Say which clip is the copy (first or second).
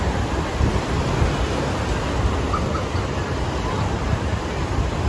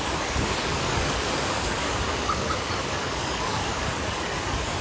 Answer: second